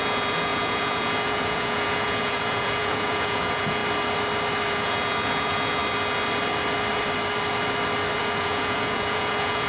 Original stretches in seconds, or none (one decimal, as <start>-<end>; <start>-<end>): 3.8-4.7; 5.8-8.2